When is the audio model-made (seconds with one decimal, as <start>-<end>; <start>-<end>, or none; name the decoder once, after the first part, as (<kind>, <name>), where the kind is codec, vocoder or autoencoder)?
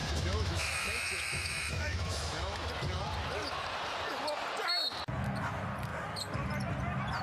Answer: 0.0-2.7 (autoencoder, DAC-VAE)